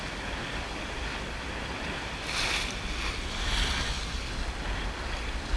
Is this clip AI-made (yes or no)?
no